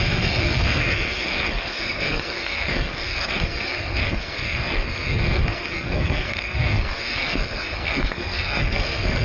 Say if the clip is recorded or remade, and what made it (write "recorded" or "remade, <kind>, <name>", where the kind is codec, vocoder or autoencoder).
remade, codec, SNAC